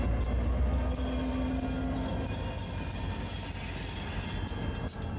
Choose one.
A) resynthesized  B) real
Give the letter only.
B